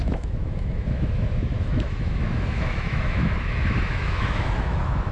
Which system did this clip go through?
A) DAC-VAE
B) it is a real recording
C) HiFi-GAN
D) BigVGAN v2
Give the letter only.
A